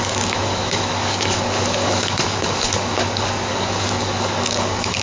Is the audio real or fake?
fake